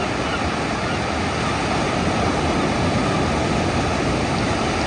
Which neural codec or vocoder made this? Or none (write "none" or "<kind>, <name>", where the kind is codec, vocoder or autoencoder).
none